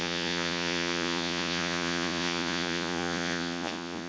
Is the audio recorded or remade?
remade